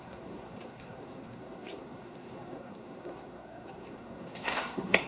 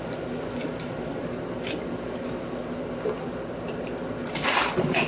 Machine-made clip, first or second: first